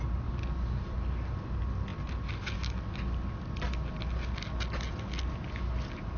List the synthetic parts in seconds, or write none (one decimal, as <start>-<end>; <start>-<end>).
none